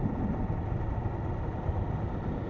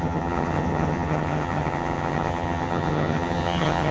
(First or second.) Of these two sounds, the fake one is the second